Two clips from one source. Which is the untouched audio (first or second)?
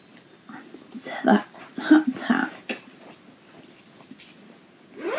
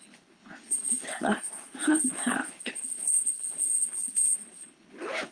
first